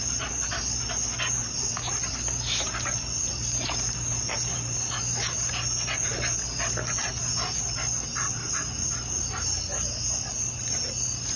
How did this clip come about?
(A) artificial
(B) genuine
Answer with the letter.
B